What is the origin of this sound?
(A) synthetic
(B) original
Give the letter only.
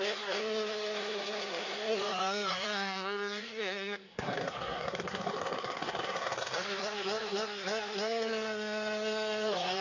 A